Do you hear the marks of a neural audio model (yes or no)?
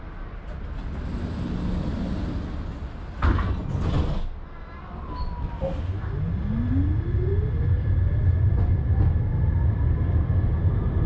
no